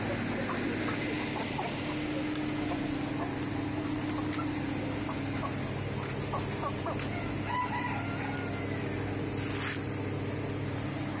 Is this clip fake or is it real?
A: real